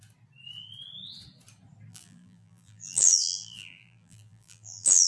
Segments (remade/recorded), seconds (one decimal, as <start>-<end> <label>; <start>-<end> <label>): 0.0-1.9 recorded; 1.9-5.1 remade